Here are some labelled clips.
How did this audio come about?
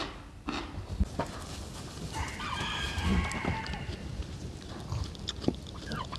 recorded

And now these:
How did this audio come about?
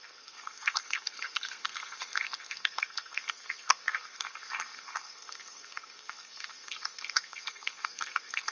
remade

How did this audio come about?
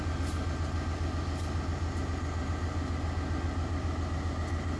recorded